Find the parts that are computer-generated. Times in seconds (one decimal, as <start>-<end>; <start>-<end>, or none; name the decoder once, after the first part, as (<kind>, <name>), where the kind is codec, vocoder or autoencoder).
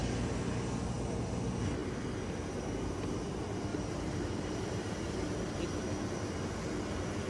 3.7-5.1 (vocoder, BigVGAN v2)